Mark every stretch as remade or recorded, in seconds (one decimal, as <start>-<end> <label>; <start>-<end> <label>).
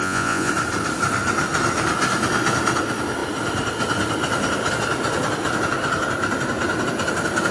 0.0-0.5 remade; 0.5-7.5 recorded